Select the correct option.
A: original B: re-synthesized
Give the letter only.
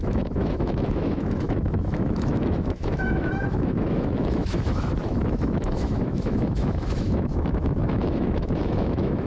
B